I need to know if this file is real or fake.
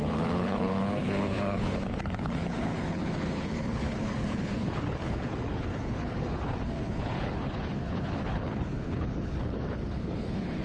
fake